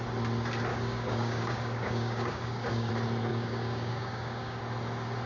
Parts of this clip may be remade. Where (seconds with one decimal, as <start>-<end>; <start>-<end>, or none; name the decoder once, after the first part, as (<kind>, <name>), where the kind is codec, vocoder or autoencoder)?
0.7-2.9 (codec, DAC); 3.3-4.6